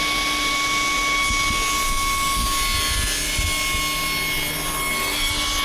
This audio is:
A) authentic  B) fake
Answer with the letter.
A